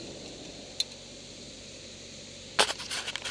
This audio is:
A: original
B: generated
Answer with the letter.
A